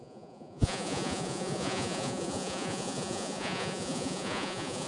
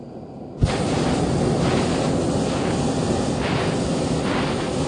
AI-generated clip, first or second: first